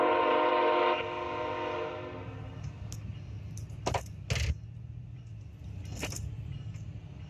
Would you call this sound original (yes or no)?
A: yes